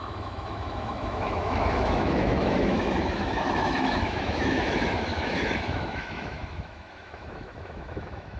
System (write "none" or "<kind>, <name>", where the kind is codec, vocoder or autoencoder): autoencoder, DAC-VAE